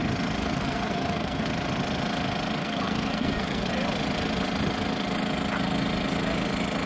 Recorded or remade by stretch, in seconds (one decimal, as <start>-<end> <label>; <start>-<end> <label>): 0.0-0.4 recorded; 0.4-1.5 remade; 1.5-2.6 recorded; 2.6-3.7 remade; 3.7-6.9 recorded